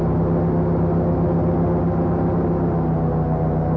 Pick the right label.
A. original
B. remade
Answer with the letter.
A